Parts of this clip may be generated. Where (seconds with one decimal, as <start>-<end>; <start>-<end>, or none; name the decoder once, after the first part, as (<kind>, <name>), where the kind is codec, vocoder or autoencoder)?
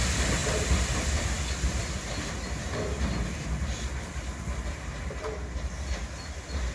0.4-2.0 (vocoder, BigVGAN v2)